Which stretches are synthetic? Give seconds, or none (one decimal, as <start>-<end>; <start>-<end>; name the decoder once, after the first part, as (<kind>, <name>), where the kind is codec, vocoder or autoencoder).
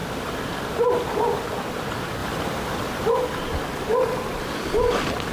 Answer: 0.0-1.0 (vocoder, BigVGAN v2)